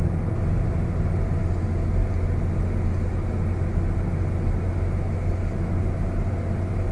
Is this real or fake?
real